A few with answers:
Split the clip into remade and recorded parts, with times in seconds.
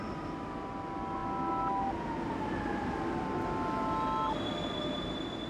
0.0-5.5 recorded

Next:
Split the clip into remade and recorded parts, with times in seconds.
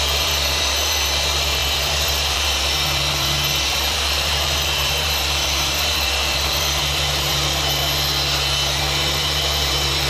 0.0-7.8 remade; 7.8-8.8 recorded; 8.8-10.1 remade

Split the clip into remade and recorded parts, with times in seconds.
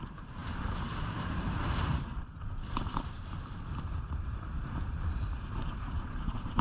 0.0-6.6 remade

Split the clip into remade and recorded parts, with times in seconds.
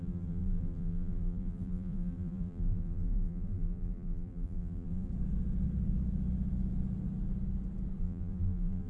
0.0-5.1 remade; 5.1-8.0 recorded; 8.0-8.9 remade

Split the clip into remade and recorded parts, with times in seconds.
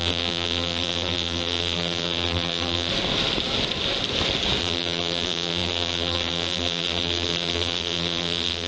0.0-2.9 remade; 2.9-4.6 recorded; 4.6-8.7 remade